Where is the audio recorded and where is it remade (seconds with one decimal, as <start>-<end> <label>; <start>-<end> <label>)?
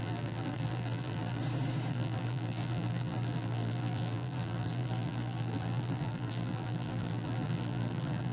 0.0-1.4 remade; 1.4-1.9 recorded; 1.9-8.3 remade